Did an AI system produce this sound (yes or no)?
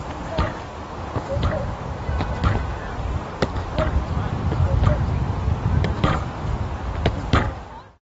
no